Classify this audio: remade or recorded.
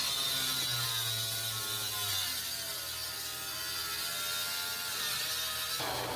recorded